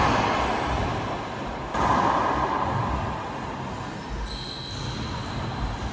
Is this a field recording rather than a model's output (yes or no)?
yes